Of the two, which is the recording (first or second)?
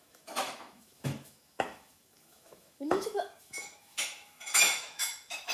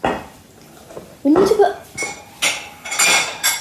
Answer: second